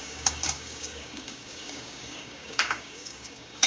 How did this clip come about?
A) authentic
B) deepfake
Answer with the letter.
B